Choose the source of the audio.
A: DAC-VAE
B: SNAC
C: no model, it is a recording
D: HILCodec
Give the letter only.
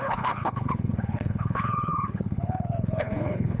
D